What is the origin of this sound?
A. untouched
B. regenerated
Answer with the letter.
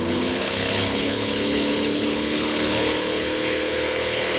B